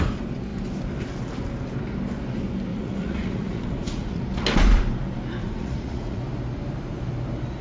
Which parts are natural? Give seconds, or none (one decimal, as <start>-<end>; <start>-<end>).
0.0-2.7; 4.2-5.4; 6.2-7.6